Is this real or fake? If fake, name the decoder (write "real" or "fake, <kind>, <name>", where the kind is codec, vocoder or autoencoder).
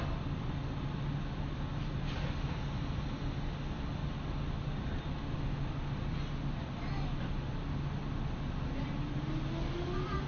real